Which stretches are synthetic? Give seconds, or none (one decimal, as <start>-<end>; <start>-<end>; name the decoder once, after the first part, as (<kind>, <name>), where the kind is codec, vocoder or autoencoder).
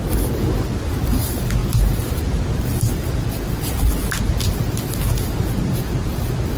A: none